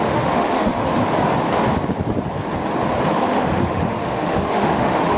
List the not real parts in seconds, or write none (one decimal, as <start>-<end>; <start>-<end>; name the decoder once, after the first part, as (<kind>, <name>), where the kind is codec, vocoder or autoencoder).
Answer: 0.0-1.0 (autoencoder, DAC-VAE); 3.1-5.2